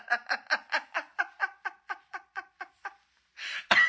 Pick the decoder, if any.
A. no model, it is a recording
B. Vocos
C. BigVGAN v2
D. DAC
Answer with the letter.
A